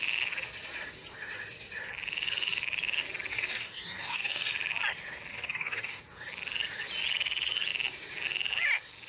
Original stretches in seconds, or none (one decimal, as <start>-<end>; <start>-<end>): 0.0-3.3; 4.5-5.3; 6.0-9.1